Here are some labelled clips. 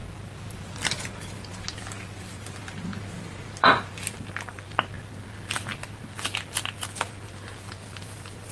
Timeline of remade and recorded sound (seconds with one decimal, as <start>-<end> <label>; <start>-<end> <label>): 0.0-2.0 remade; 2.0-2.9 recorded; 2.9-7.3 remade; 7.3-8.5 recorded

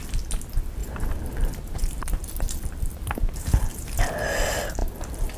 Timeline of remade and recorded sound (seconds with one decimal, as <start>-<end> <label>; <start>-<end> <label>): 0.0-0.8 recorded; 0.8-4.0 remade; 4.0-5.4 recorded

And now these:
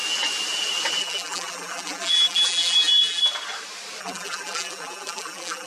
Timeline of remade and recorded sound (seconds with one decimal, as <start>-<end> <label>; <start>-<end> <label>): 0.0-1.0 recorded; 1.0-3.2 remade; 3.2-4.0 recorded; 4.0-5.7 remade

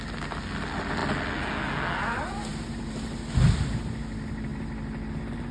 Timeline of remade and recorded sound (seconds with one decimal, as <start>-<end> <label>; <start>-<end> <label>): 0.0-5.5 recorded

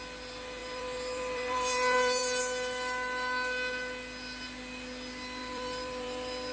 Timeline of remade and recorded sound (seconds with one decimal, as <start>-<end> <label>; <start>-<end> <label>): 0.0-0.6 recorded; 0.6-2.4 remade; 2.4-5.4 recorded; 5.4-6.5 remade

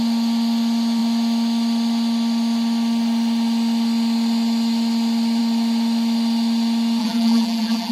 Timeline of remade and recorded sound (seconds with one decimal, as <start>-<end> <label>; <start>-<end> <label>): 0.0-7.0 recorded; 7.0-7.9 remade

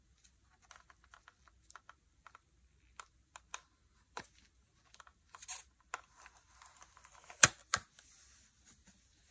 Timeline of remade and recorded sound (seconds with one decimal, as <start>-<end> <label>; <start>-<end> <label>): 0.0-9.3 recorded

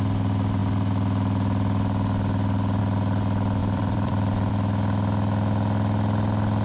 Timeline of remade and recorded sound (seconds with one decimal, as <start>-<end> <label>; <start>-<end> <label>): 0.0-3.6 recorded; 3.6-4.5 remade; 4.5-6.6 recorded